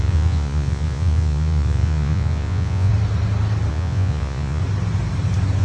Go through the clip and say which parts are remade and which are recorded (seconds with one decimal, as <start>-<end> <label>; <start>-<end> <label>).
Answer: 0.0-2.9 remade; 2.9-3.7 recorded; 3.7-4.6 remade; 4.6-5.6 recorded